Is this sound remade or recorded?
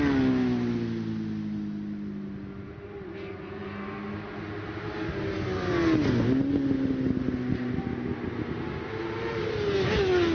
recorded